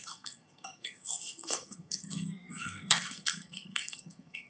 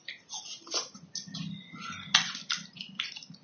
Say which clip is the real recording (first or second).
second